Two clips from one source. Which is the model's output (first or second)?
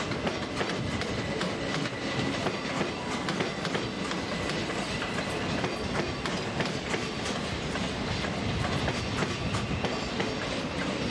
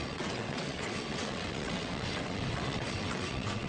second